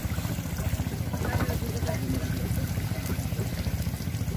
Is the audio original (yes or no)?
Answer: yes